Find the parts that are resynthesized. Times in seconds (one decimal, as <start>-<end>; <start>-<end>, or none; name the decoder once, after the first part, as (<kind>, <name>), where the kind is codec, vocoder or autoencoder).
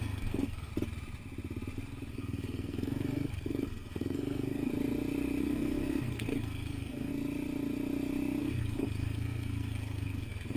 0.0-0.7 (codec, SNAC); 2.1-4.7; 5.4-7.1; 8.4-10.6